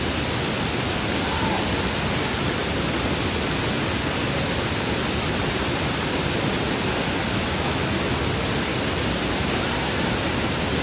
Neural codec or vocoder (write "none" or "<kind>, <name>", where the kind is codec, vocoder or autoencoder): none